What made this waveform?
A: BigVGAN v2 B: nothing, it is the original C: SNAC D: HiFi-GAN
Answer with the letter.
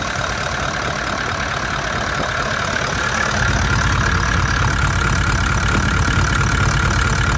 B